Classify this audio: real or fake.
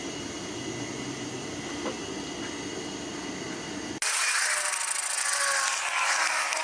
real